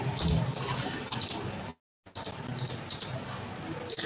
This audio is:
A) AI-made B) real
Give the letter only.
B